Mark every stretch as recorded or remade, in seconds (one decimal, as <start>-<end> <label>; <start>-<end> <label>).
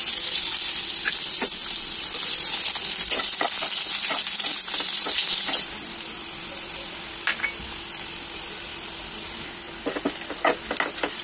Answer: 0.0-5.2 recorded; 5.2-6.7 remade; 6.7-11.2 recorded